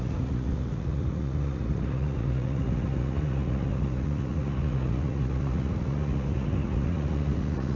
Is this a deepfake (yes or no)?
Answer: yes